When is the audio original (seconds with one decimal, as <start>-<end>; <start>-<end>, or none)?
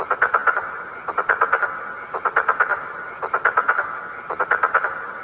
0.0-5.2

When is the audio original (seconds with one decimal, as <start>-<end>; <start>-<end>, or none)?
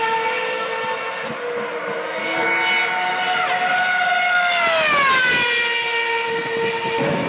0.0-7.3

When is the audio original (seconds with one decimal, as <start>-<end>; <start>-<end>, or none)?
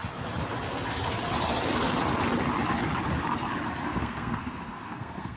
0.0-3.9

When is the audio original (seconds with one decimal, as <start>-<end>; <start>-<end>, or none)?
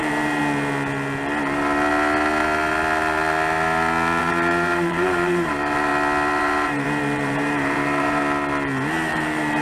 0.4-4.2; 5.9-6.4; 8.2-9.1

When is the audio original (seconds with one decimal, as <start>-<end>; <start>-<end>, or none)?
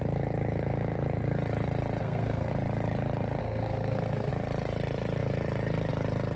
0.0-2.0; 2.5-3.4; 4.3-6.4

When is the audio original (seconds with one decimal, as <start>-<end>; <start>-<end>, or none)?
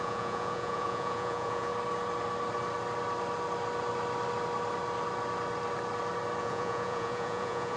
1.7-6.4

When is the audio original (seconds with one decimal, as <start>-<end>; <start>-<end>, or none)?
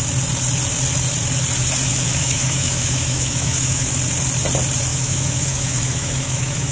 0.0-1.9; 3.9-4.9